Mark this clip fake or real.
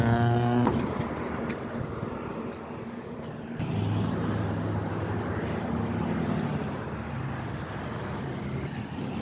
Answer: real